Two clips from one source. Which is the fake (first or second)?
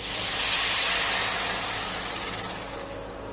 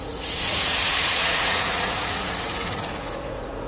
second